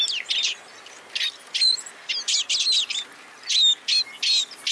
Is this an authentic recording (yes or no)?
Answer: yes